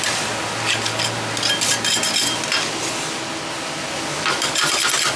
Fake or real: real